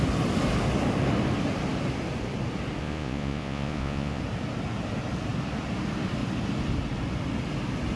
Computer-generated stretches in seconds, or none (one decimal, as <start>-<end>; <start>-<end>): 2.8-4.2

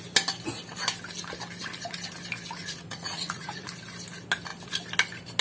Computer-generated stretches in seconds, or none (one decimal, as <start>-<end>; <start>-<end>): 2.6-3.7

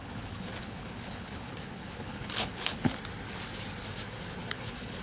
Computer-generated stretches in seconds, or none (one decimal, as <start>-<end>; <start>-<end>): 0.0-3.0; 4.4-5.0

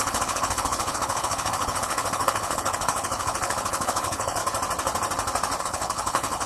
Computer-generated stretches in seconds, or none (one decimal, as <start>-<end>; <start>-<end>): 0.0-4.4; 5.6-6.5

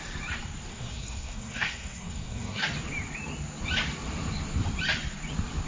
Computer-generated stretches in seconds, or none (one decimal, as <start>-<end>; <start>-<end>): 0.7-2.6

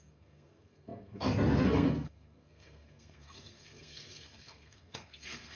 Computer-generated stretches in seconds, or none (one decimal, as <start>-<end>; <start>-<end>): 0.0-5.6

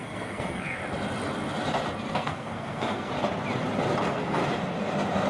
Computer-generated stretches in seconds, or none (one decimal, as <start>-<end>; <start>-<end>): 0.0-0.8; 2.1-3.1; 4.0-4.4